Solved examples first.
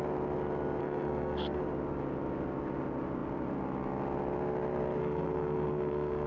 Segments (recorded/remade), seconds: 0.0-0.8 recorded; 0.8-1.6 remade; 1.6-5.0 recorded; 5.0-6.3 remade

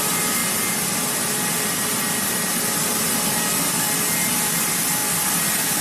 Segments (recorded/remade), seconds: 0.0-5.8 recorded

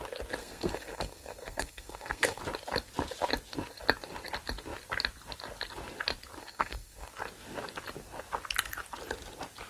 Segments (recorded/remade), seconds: 0.0-0.4 recorded; 0.4-2.4 remade; 2.4-6.4 recorded; 6.4-7.1 remade; 7.1-9.7 recorded

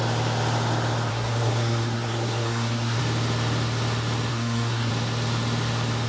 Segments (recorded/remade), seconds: 0.0-1.1 recorded; 1.1-3.0 remade; 3.0-4.3 recorded; 4.3-4.9 remade; 4.9-6.1 recorded